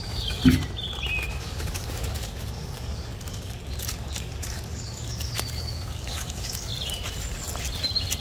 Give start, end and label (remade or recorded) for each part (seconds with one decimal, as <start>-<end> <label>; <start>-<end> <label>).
0.0-0.4 remade; 0.4-1.3 recorded; 1.3-6.7 remade; 6.7-8.2 recorded